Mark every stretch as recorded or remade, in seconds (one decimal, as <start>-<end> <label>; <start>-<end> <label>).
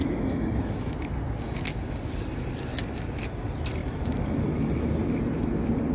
0.0-0.9 remade; 0.9-3.8 recorded; 3.8-4.9 remade; 4.9-5.9 recorded